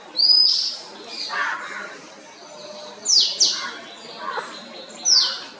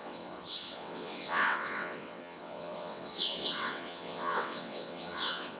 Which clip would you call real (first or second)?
first